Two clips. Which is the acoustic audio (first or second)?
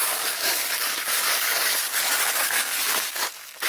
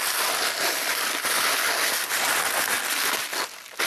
second